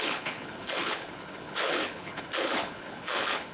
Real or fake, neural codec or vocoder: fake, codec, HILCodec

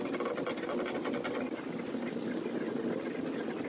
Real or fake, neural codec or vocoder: real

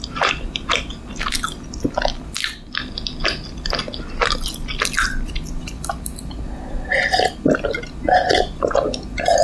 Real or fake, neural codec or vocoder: real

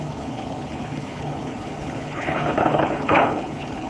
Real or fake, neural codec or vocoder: fake, codec, HILCodec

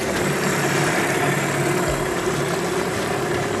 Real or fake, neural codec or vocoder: real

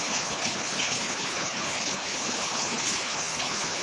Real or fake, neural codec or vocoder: fake, codec, HILCodec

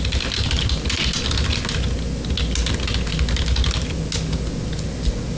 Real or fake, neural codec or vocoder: real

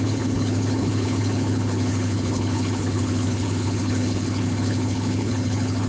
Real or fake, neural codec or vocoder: fake, codec, HILCodec